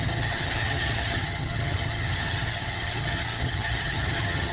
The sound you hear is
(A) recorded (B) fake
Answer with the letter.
B